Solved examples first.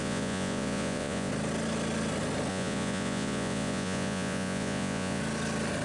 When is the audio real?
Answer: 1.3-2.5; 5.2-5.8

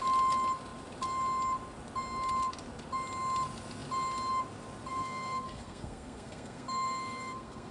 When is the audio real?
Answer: 0.0-4.9

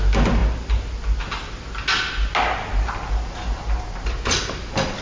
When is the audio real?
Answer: 0.0-5.0

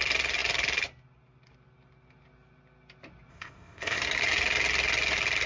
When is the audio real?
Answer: 0.0-3.3; 4.0-5.5

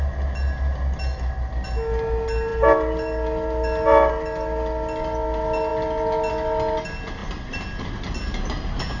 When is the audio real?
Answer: 0.0-2.5; 4.1-7.2; 8.0-9.0

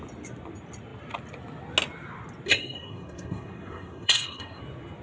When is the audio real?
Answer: 0.0-2.5; 4.6-5.0

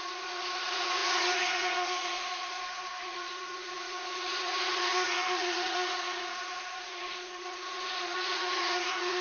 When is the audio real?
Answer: none

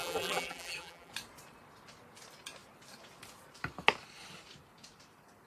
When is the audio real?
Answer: 1.1-5.5